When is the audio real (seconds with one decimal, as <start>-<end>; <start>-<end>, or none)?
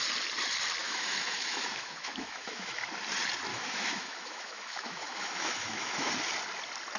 0.0-0.8; 2.9-3.5; 6.1-7.0